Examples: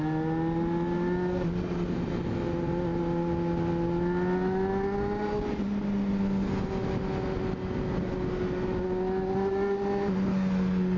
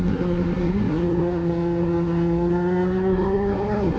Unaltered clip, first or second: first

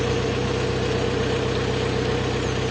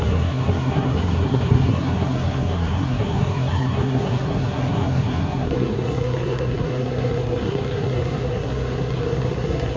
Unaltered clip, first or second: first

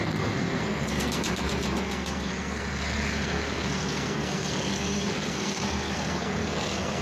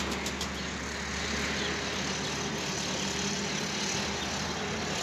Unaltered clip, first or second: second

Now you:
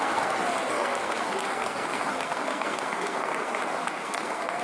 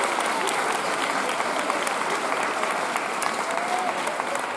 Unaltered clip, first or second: second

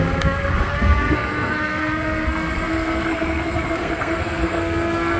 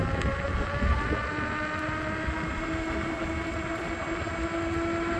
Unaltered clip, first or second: second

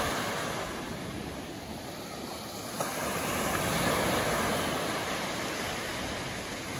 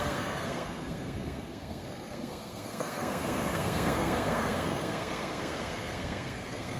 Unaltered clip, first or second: first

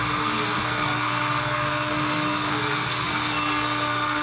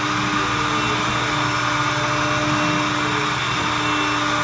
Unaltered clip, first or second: second